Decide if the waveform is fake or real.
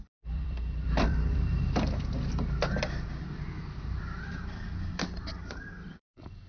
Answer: fake